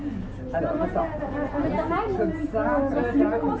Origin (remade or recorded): recorded